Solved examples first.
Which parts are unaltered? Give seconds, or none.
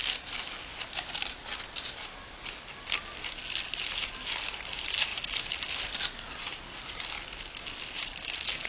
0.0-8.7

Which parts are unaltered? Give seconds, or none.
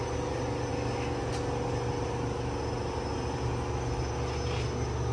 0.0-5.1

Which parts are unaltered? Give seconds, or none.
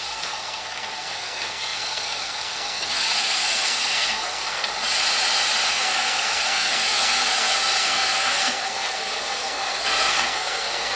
4.7-5.7